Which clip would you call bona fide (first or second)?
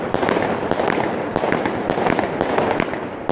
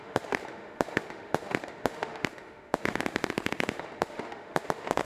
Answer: first